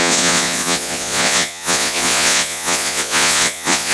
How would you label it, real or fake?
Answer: fake